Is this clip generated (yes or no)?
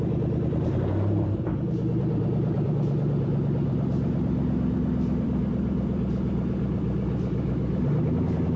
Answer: yes